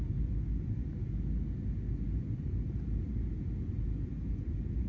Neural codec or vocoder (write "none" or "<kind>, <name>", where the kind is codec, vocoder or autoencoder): none